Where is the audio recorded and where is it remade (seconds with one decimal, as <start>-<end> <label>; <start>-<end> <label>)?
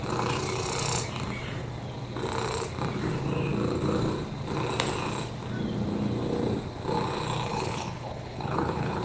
0.0-7.5 recorded; 7.5-9.0 remade